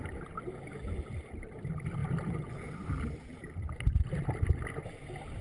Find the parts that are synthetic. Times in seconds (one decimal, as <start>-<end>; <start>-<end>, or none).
none